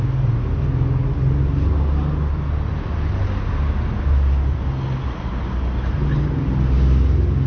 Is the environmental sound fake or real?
real